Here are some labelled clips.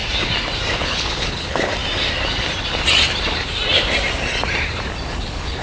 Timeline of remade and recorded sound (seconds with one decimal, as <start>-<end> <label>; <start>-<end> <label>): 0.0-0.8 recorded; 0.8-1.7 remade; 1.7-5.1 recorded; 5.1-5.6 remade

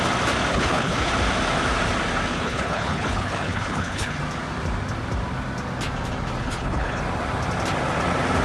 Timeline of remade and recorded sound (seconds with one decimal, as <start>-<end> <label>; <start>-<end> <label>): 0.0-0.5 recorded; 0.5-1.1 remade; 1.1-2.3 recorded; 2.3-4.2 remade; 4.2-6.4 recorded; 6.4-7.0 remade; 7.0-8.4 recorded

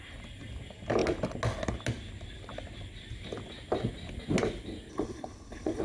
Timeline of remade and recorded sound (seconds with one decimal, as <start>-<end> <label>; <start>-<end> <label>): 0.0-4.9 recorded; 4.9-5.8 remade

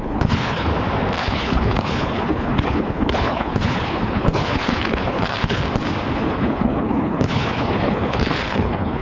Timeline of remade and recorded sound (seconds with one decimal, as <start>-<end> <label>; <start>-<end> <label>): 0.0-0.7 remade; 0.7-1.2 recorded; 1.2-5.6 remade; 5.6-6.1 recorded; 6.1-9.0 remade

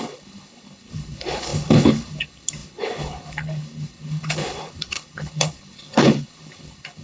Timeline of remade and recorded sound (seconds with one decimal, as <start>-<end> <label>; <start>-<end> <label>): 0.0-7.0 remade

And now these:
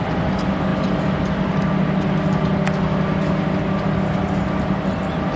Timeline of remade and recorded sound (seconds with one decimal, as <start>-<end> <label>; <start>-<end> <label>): 0.0-5.4 recorded